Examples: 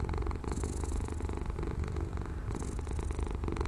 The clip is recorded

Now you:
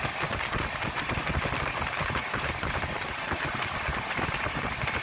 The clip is recorded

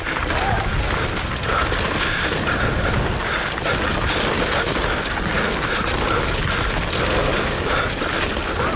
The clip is recorded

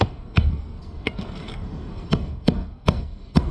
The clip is remade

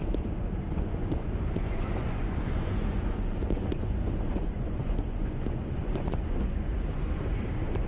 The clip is remade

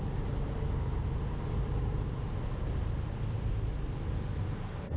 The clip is recorded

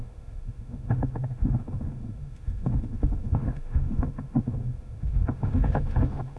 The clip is remade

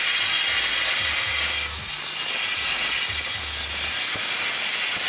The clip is recorded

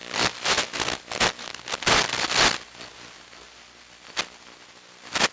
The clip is recorded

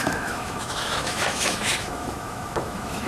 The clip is remade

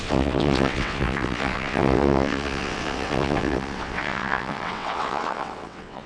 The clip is remade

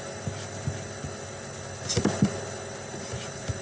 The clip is recorded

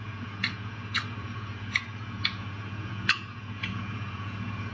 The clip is remade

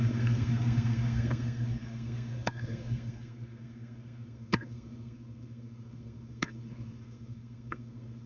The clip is remade